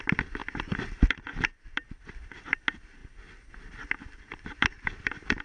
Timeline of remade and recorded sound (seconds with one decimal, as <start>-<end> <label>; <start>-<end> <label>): 0.0-5.4 recorded